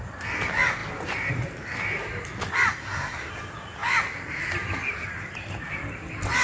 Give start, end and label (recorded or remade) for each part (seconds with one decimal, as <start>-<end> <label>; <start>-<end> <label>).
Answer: 0.0-2.8 recorded; 2.8-3.3 remade; 3.3-6.4 recorded